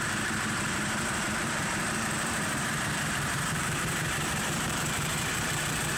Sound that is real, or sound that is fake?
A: fake